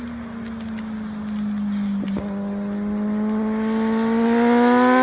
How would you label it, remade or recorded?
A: recorded